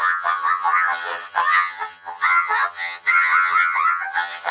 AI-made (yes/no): yes